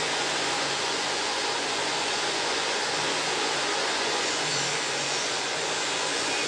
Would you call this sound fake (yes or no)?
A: yes